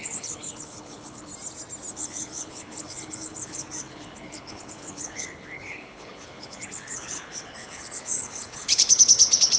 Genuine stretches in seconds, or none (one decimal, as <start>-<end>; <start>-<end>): 1.3-1.9

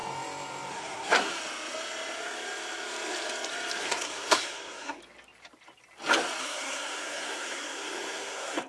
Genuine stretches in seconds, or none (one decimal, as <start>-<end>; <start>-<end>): 0.0-0.7; 1.3-3.8; 5.0-6.4

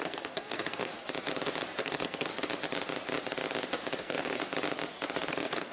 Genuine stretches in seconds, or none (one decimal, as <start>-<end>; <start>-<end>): 0.9-1.8; 2.3-4.0; 4.4-5.3

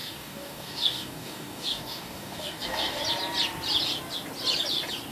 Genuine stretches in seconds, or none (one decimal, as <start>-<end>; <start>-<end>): 3.0-5.1